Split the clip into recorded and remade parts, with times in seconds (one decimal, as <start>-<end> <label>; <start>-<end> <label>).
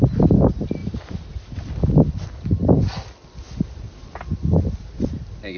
0.0-5.6 remade